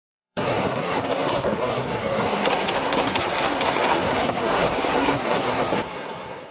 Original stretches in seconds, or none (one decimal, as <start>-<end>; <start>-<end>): none